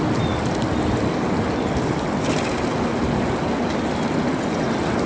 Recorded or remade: recorded